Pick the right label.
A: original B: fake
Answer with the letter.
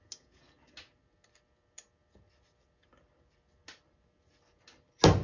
A